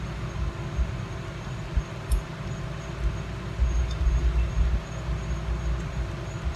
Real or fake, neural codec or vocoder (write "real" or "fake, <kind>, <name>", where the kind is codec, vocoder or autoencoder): real